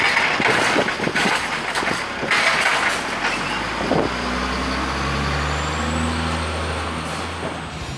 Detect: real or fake real